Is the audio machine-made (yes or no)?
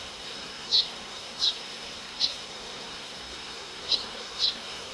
yes